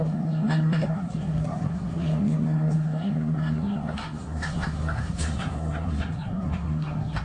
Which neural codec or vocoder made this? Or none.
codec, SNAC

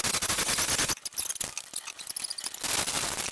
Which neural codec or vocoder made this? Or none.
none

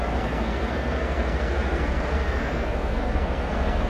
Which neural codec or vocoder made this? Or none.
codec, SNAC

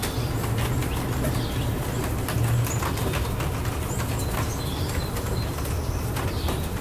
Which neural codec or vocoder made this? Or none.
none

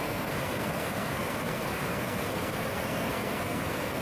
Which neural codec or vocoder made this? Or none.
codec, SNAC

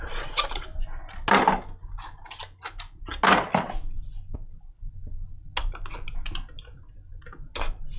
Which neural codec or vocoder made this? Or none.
none